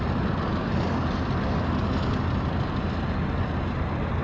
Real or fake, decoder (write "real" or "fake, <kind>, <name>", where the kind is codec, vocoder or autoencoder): real